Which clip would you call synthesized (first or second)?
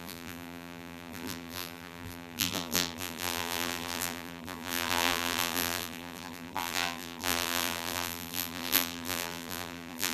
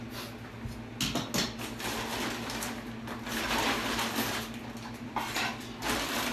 first